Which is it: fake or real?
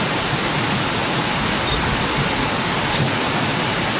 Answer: real